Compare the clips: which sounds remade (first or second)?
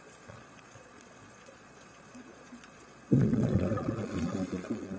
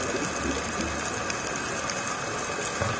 first